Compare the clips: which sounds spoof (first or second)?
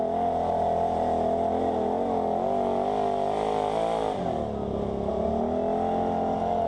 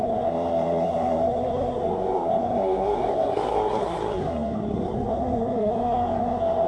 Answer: second